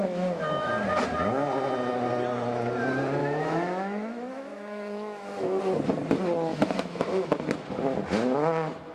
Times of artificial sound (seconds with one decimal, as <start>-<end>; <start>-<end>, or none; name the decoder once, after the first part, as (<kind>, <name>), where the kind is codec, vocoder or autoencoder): 0.0-0.7 (autoencoder, DAC-VAE); 3.2-5.6; 6.5-7.3